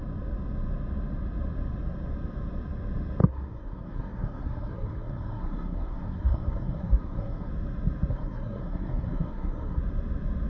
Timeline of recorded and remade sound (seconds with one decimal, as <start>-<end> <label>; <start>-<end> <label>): 0.0-3.2 recorded; 3.2-7.5 remade; 7.5-8.1 recorded; 8.1-9.8 remade; 9.8-10.5 recorded